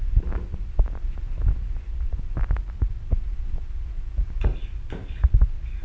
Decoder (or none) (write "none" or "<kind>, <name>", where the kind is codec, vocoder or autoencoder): none